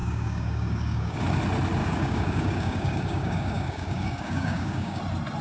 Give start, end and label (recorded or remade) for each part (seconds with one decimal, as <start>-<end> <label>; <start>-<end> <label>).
0.0-1.2 remade; 1.2-1.8 recorded; 1.8-5.0 remade; 5.0-5.4 recorded

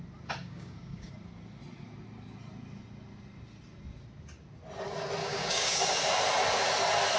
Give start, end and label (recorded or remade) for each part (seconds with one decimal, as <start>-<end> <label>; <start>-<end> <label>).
0.0-0.4 recorded; 0.4-1.1 remade; 1.1-5.2 recorded; 5.2-5.9 remade; 5.9-7.2 recorded

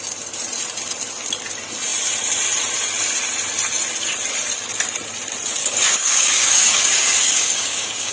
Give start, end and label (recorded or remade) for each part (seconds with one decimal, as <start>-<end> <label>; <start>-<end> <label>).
0.0-5.6 recorded; 5.6-8.1 remade

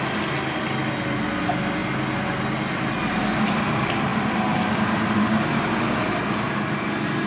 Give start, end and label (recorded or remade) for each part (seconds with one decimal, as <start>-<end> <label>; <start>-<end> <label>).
0.0-7.3 recorded

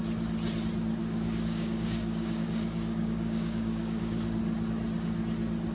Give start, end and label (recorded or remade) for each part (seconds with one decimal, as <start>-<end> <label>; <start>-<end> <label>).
0.0-1.0 recorded; 1.0-4.4 remade; 4.4-5.7 recorded

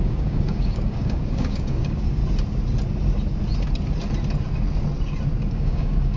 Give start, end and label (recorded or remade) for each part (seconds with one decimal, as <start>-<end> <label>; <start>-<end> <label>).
0.0-2.2 remade; 2.2-5.5 recorded; 5.5-6.2 remade

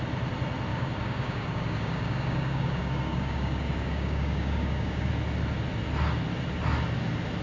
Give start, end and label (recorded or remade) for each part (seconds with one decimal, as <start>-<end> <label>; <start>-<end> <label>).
0.0-0.7 recorded; 0.7-5.1 remade; 5.1-7.4 recorded

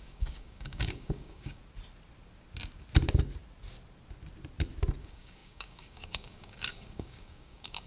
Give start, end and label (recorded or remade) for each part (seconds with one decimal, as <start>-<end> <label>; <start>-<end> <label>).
0.0-1.6 remade; 1.6-5.0 recorded; 5.0-7.9 remade